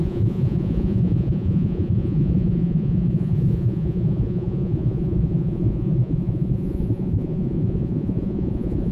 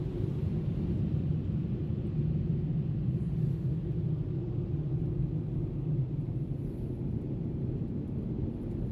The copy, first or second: first